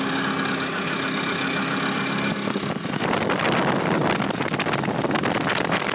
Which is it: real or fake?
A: real